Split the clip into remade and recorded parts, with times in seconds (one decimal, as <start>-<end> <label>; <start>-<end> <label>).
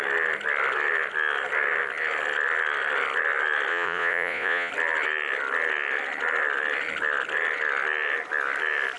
0.0-3.7 recorded; 3.7-4.7 remade; 4.7-9.0 recorded